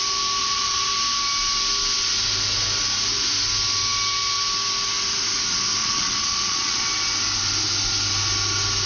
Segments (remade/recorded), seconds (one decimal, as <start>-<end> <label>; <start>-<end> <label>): 0.0-0.4 recorded; 0.4-0.9 remade; 0.9-5.8 recorded; 5.8-6.8 remade; 6.8-8.9 recorded